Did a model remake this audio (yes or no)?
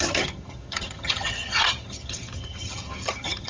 yes